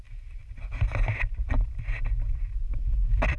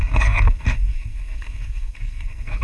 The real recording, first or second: first